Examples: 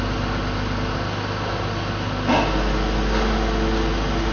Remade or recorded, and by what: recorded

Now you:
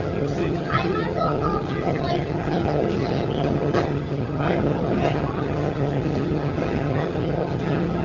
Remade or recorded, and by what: remade, vocoder, HiFi-GAN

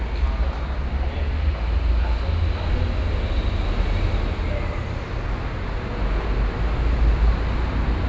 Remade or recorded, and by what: recorded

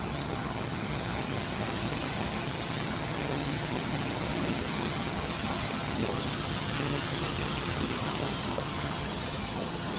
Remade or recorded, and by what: remade, vocoder, HiFi-GAN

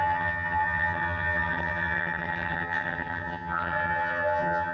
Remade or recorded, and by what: remade, vocoder, HiFi-GAN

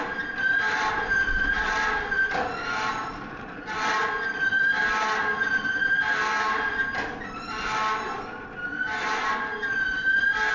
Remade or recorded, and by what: recorded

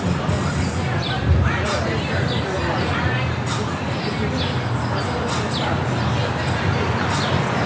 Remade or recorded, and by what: recorded